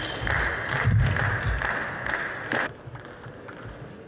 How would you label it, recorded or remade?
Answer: recorded